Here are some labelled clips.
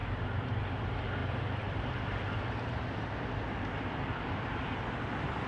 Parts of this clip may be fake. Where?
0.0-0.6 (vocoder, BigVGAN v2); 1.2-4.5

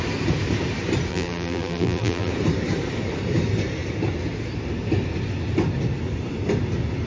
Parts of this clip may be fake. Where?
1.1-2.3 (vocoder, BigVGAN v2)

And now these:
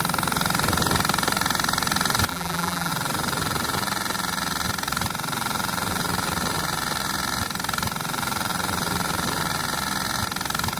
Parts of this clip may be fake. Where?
2.3-2.9 (vocoder, BigVGAN v2)